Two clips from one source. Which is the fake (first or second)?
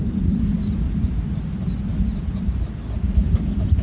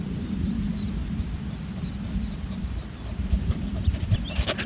second